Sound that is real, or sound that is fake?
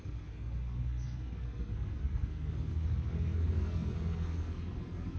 fake